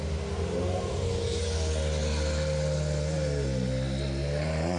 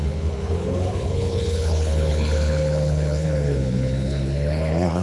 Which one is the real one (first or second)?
first